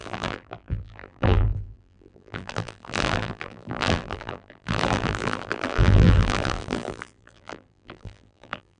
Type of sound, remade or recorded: remade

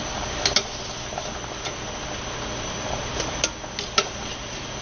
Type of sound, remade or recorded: recorded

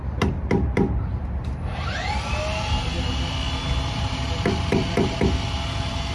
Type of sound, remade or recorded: recorded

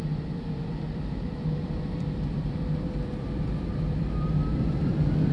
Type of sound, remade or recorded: remade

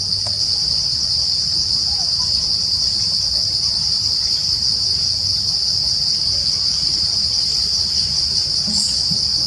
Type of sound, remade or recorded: recorded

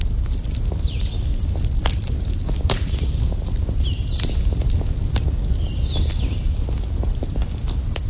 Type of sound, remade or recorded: recorded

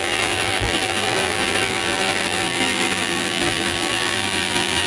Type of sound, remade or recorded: remade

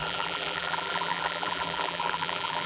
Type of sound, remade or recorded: remade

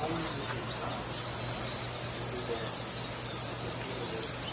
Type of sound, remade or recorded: recorded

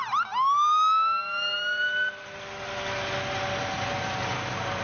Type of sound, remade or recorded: recorded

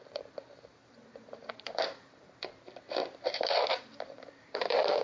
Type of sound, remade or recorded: remade